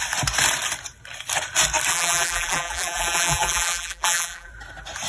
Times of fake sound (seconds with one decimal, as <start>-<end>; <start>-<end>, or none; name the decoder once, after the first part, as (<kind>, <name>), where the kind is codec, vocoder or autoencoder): 1.9-4.5 (vocoder, BigVGAN v2)